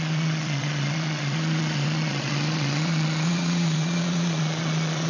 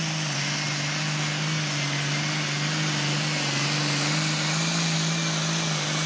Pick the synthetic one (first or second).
first